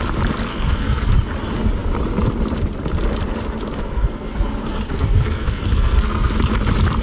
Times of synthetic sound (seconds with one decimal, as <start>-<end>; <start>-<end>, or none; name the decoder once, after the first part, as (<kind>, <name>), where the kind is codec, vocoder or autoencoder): 0.5-1.1 (codec, SNAC); 3.8-6.3